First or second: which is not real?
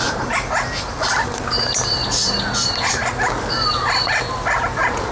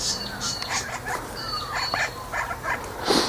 second